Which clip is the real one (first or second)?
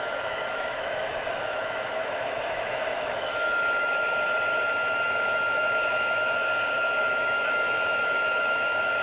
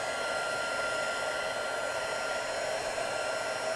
second